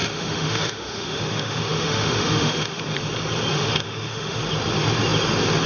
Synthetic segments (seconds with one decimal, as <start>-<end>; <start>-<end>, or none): 0.0-2.8; 3.5-4.4